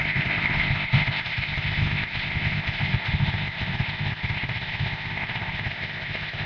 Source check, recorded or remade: remade